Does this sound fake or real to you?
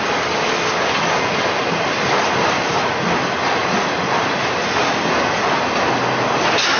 real